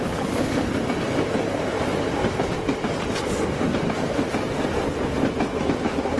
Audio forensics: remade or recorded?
recorded